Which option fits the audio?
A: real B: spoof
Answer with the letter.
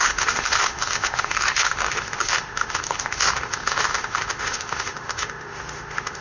B